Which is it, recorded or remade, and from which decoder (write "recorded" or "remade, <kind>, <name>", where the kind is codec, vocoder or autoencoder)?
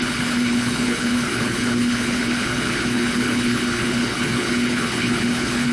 remade, codec, HILCodec